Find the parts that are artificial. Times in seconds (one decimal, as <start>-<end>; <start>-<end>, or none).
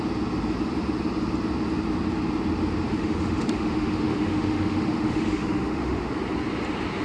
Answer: 2.9-6.1